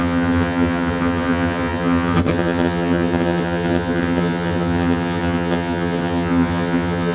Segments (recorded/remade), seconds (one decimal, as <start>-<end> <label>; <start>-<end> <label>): 0.0-7.1 remade